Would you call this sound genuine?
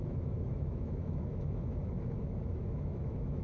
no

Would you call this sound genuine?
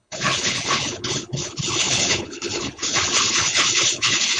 no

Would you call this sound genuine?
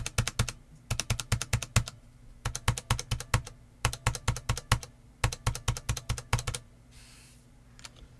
yes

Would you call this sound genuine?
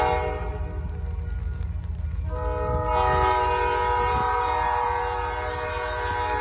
yes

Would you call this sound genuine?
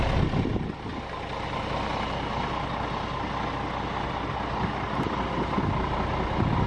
yes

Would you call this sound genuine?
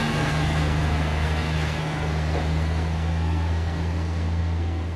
no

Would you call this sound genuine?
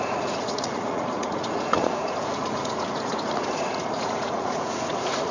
no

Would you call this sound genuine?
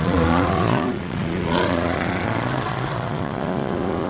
no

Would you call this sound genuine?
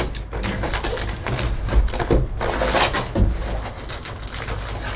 yes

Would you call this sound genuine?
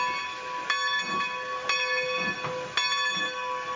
yes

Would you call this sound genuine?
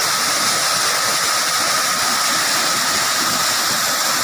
yes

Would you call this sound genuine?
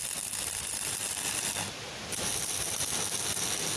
yes